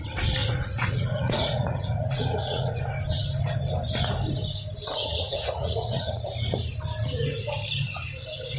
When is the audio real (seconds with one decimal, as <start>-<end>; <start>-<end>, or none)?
0.0-0.4; 2.7-5.0; 6.1-8.6